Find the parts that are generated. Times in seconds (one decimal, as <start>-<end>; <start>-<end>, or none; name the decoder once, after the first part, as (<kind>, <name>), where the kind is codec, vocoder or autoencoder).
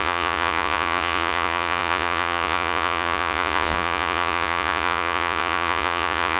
0.0-6.4 (vocoder, Vocos)